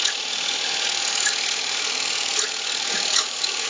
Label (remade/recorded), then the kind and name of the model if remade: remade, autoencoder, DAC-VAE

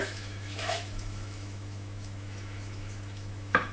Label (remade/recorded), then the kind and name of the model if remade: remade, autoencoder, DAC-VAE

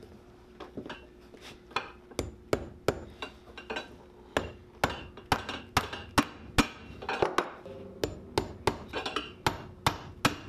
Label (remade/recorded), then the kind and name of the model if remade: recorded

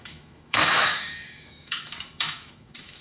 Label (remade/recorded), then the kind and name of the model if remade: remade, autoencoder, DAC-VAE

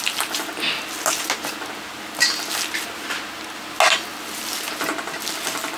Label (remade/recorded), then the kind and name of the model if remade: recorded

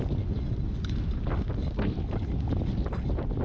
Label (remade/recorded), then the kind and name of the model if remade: recorded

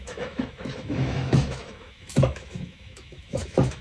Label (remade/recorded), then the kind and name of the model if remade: remade, autoencoder, DAC-VAE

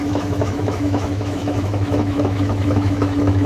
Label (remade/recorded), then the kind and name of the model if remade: remade, autoencoder, DAC-VAE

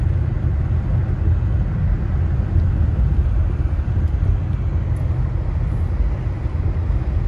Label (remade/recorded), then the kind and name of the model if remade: recorded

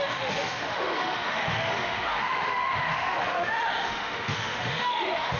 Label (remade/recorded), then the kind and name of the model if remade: remade, autoencoder, DAC-VAE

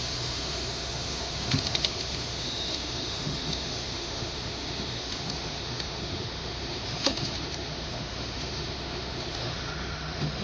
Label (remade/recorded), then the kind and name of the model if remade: remade, autoencoder, DAC-VAE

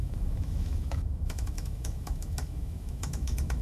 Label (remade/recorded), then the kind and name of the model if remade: remade, autoencoder, DAC-VAE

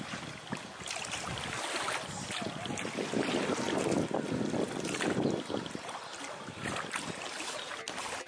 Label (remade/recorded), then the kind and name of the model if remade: recorded